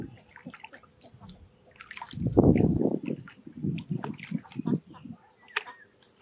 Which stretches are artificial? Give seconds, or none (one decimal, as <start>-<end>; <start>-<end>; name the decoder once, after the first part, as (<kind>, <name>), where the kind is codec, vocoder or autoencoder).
none